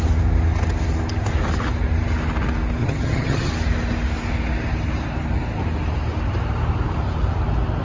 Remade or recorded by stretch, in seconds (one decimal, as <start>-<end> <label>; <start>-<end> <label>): 0.0-2.8 recorded; 2.8-3.5 remade; 3.5-7.8 recorded